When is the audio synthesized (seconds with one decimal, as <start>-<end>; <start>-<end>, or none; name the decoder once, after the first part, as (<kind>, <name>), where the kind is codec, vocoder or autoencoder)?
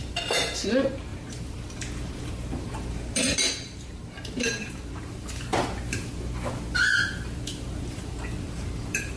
0.0-5.5 (vocoder, BigVGAN v2); 6.9-9.2